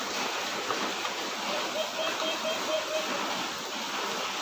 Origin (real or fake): real